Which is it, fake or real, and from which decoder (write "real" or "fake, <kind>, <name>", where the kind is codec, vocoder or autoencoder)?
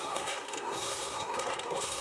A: fake, codec, SNAC